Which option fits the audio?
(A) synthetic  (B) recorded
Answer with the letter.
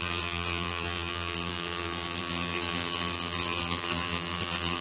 A